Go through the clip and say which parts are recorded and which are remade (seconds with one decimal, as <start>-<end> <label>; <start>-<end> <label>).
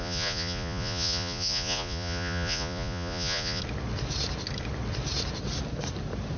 0.0-3.6 remade; 3.6-6.4 recorded